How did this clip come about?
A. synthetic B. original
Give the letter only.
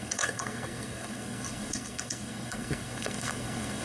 A